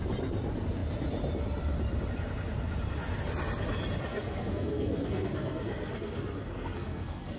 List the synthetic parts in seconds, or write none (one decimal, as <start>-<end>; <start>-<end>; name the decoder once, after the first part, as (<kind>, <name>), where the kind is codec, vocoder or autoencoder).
4.1-7.4 (codec, SNAC)